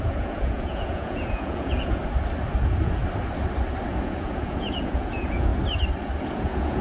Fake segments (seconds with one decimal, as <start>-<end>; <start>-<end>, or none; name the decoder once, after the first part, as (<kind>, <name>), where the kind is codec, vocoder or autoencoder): 0.0-2.0 (vocoder, Vocos); 2.6-3.0; 3.9-5.5; 6.2-6.8